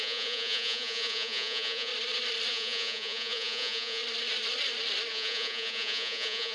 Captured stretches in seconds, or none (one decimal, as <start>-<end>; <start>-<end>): 1.9-2.5; 4.0-5.1